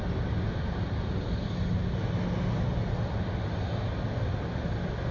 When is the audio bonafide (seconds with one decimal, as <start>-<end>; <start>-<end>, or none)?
0.0-5.1

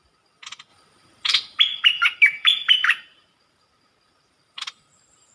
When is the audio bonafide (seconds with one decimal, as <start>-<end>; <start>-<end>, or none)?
0.0-0.7; 1.6-2.0